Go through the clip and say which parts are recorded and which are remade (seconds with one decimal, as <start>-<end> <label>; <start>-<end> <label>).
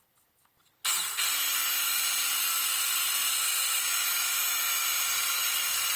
0.0-6.0 recorded